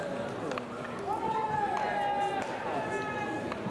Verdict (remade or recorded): recorded